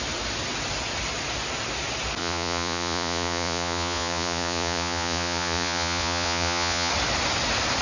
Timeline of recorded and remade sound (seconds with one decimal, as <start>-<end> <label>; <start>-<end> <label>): 0.0-2.2 recorded; 2.2-6.9 remade; 6.9-7.8 recorded